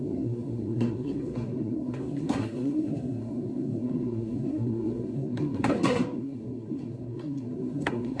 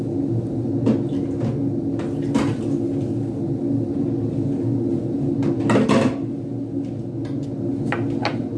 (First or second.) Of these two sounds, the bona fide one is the second